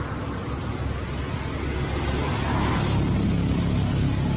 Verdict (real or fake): real